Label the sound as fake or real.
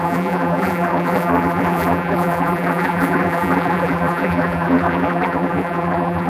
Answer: fake